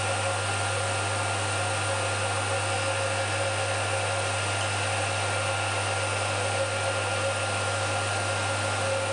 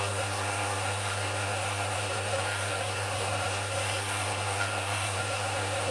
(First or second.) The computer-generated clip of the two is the second